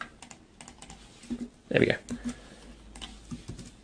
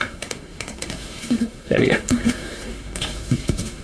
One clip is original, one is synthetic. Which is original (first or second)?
first